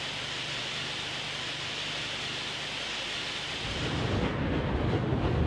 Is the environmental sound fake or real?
real